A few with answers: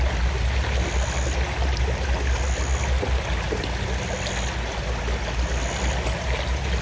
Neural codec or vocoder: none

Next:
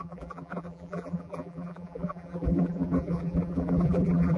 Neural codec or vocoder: vocoder, BigVGAN v2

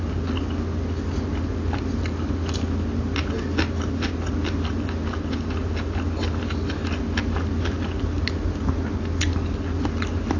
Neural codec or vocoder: none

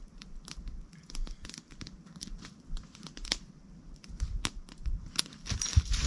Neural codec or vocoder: vocoder, BigVGAN v2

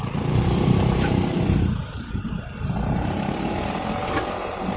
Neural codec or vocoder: vocoder, BigVGAN v2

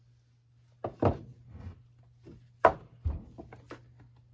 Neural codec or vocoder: none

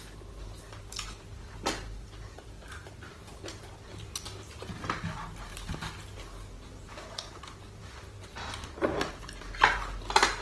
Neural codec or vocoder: none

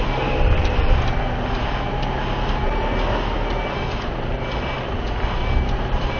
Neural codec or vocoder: none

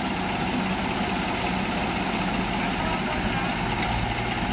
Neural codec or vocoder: none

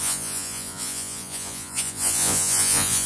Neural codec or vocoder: vocoder, Vocos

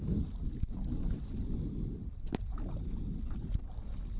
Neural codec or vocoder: none